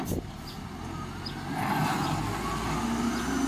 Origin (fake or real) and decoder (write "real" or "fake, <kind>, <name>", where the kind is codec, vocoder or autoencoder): real